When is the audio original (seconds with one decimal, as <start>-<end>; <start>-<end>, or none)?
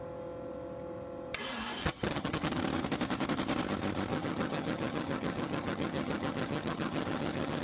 0.0-1.8; 2.6-4.1